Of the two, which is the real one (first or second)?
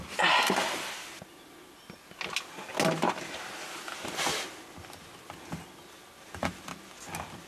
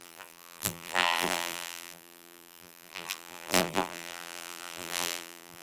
first